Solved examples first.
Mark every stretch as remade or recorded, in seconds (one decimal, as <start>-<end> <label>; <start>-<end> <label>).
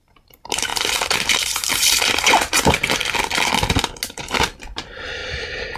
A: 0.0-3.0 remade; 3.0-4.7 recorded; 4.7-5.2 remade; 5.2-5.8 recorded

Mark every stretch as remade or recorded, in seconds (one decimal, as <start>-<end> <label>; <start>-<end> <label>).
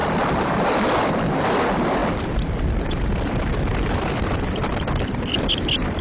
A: 0.0-6.0 remade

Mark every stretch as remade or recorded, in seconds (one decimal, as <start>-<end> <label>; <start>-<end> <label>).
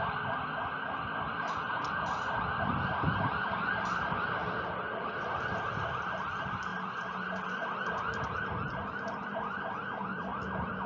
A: 0.0-6.7 recorded; 6.7-8.5 remade; 8.5-10.3 recorded; 10.3-10.9 remade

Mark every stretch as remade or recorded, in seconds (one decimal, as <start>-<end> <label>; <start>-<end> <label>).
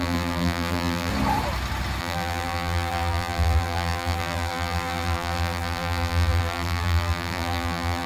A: 0.0-1.1 remade; 1.1-2.0 recorded; 2.0-8.1 remade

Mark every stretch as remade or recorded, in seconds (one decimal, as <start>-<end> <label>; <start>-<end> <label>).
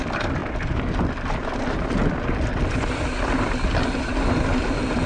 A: 0.0-5.1 recorded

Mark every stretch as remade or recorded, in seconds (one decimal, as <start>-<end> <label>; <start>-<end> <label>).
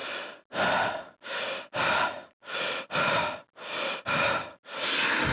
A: 0.0-5.3 recorded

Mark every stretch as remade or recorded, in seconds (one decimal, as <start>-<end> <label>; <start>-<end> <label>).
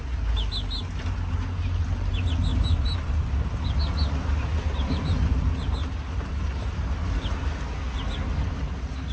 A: 0.0-2.5 recorded; 2.5-3.1 remade; 3.1-4.8 recorded; 4.8-5.3 remade; 5.3-5.8 recorded; 5.8-6.7 remade; 6.7-9.1 recorded